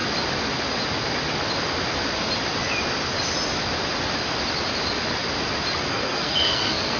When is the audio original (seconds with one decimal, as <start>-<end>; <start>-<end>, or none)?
0.0-5.9